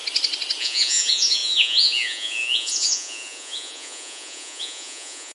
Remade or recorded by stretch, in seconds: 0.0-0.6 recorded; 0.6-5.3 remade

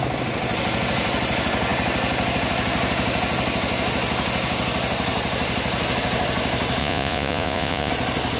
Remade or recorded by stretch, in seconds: 0.0-6.8 recorded; 6.8-7.9 remade; 7.9-8.4 recorded

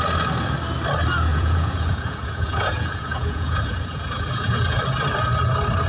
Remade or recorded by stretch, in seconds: 0.0-1.3 recorded; 1.3-4.8 remade; 4.8-5.9 recorded

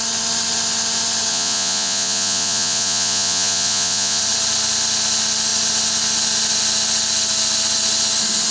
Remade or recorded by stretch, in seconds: 0.0-1.3 recorded; 1.3-4.2 remade; 4.2-8.5 recorded